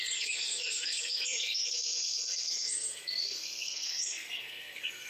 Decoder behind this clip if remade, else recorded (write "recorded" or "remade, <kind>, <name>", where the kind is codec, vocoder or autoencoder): remade, codec, SNAC